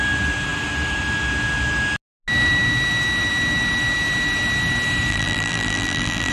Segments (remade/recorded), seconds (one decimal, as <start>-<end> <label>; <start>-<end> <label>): 0.0-5.1 recorded; 5.1-6.3 remade